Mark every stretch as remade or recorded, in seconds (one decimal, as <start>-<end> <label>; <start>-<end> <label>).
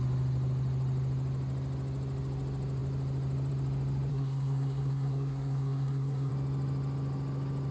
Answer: 0.0-4.1 recorded; 4.1-6.3 remade; 6.3-7.7 recorded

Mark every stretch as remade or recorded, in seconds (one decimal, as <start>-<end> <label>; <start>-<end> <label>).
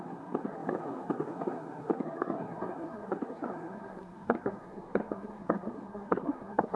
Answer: 0.0-6.8 remade